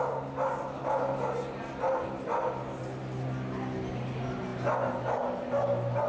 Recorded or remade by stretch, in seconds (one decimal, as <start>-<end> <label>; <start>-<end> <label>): 0.0-6.1 recorded